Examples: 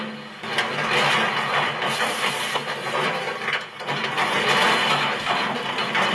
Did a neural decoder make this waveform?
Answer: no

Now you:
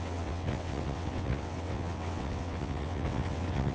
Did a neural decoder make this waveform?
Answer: yes